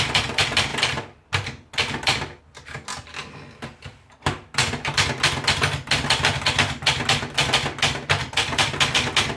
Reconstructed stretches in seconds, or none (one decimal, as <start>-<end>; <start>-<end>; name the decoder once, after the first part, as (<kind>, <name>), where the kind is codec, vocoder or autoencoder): none